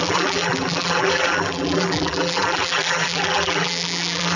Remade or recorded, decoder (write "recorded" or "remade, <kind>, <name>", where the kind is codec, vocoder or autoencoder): remade, vocoder, BigVGAN v2